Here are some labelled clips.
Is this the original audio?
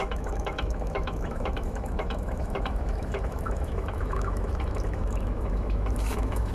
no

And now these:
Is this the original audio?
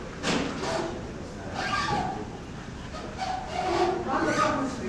yes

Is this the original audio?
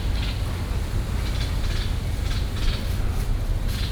yes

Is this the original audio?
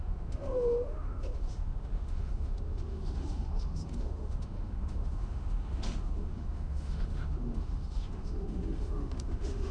no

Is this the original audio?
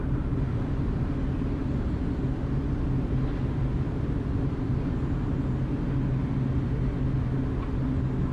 yes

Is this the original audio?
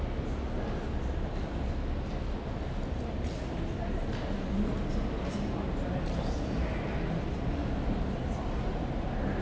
yes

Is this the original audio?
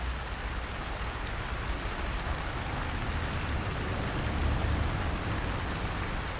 yes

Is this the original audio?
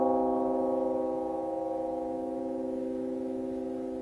no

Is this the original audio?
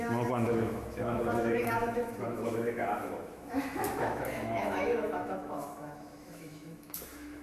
no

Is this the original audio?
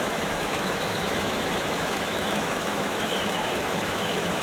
no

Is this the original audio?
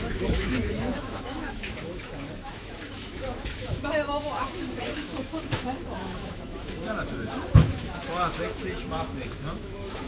no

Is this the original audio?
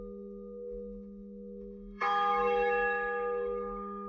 no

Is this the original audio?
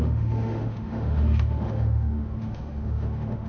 no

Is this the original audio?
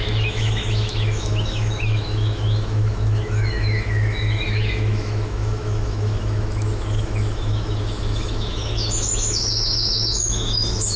no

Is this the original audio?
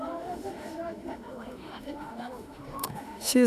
no